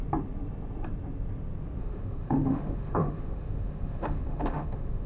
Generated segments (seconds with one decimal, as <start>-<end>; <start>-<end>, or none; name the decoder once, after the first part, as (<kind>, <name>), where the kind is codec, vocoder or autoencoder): 1.8-5.1 (autoencoder, DAC-VAE)